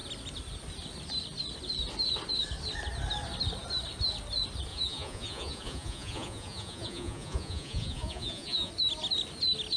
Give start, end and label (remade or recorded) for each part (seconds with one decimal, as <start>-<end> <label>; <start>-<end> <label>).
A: 0.0-4.7 recorded; 4.7-8.7 remade; 8.7-9.8 recorded

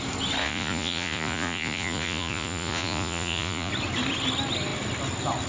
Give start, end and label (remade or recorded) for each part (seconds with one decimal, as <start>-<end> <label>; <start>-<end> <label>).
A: 0.0-0.4 recorded; 0.4-3.7 remade; 3.7-5.5 recorded

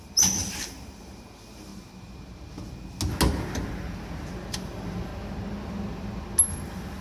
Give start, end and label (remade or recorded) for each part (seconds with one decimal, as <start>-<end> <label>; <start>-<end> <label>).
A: 0.0-1.7 remade; 1.7-4.5 recorded; 4.5-5.1 remade; 5.1-7.0 recorded

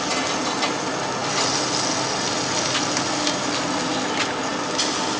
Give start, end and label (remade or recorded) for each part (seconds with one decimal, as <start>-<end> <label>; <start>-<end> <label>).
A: 0.0-5.2 recorded